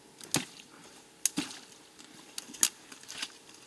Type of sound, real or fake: real